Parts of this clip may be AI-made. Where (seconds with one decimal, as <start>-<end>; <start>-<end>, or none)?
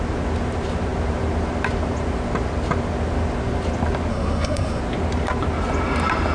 4.1-4.8